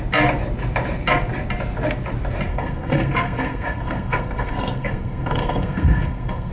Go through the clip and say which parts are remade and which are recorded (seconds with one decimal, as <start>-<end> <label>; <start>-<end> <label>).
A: 0.0-2.5 recorded; 2.5-6.5 remade